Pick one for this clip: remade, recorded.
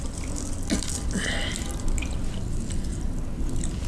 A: recorded